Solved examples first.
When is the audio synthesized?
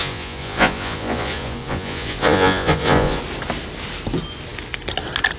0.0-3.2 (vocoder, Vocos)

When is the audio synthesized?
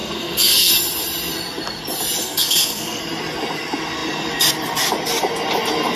0.0-0.7 (codec, SNAC); 2.2-3.0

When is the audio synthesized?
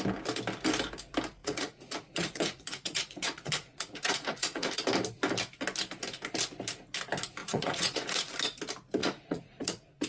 1.4-4.8 (vocoder, Vocos); 7.4-8.3; 9.0-10.1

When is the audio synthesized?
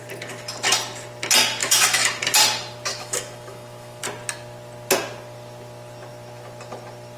1.6-2.2 (autoencoder, DAC-VAE); 2.9-4.0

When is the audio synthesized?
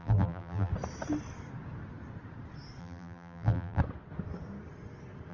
0.0-0.7 (vocoder, BigVGAN v2); 2.8-3.8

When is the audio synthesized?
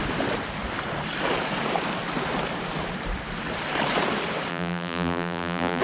4.5-5.8 (vocoder, BigVGAN v2)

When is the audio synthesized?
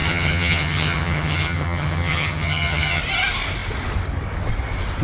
0.0-3.0 (vocoder, HiFi-GAN)